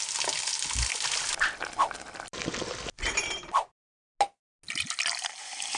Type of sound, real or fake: real